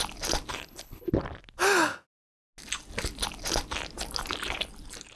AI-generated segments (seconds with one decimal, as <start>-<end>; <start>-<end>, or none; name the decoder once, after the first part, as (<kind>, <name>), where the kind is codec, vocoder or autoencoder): 0.5-1.1 (codec, HILCodec)